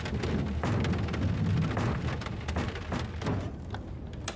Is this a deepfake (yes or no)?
no